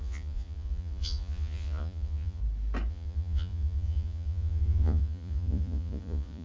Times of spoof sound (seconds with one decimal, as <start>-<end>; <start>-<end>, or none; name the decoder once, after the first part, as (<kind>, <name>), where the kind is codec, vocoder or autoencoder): 0.0-2.4 (vocoder, Vocos); 2.9-6.4